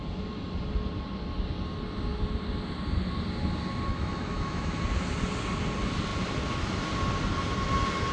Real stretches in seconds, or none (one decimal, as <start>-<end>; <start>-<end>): 0.0-3.9; 4.8-8.1

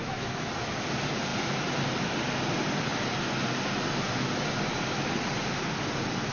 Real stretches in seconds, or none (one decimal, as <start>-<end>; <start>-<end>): 0.5-6.3